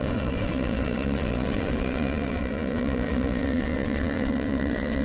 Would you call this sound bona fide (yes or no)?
no